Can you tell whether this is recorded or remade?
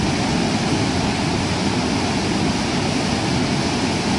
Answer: recorded